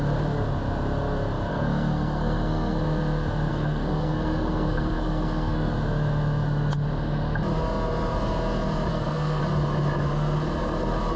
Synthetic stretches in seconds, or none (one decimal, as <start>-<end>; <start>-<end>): 1.5-2.8; 3.5-5.7; 8.9-9.4